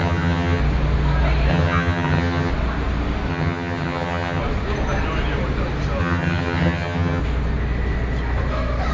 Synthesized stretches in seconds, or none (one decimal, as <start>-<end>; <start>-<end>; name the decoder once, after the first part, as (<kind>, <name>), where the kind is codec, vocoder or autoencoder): 0.0-0.6 (vocoder, HiFi-GAN); 1.5-2.5; 3.3-4.4; 6.0-7.2